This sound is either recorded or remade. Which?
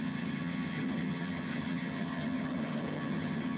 remade